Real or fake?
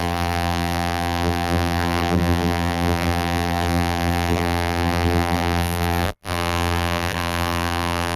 fake